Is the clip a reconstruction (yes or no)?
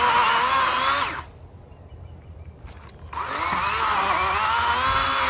no